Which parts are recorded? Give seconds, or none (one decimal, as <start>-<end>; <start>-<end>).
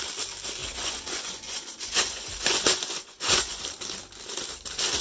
0.0-0.6; 3.6-5.0